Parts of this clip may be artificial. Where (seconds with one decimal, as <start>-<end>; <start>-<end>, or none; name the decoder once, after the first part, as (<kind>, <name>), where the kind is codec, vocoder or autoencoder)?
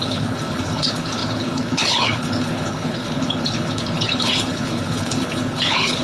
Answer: 0.0-6.0 (codec, HILCodec)